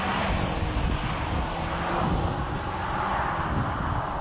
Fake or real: real